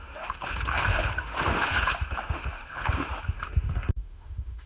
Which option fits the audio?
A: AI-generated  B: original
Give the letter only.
A